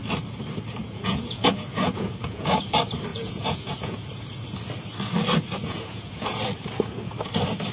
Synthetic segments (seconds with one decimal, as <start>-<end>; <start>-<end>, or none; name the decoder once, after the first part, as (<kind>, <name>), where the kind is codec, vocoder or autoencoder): 0.8-2.6 (vocoder, Vocos); 3.1-4.0; 5.6-6.4